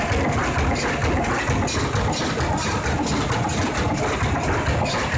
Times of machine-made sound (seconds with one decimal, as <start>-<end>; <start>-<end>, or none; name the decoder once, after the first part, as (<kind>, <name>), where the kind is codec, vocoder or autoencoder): none